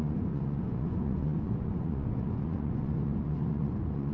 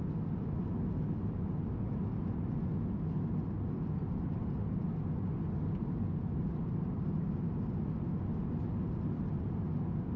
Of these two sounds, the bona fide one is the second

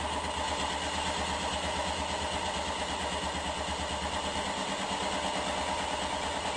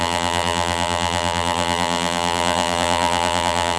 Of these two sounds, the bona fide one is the first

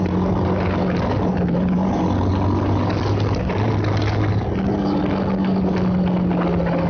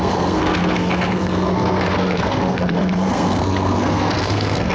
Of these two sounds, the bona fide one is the first